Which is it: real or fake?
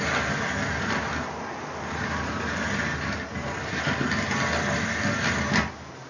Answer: real